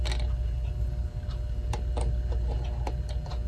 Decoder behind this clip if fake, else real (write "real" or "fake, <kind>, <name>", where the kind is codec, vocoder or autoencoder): real